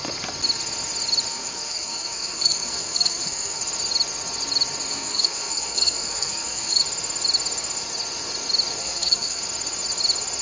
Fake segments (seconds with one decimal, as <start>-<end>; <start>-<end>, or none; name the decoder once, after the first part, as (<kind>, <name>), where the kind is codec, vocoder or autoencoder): 1.3-3.6 (codec, SNAC); 4.9-6.8; 8.8-9.4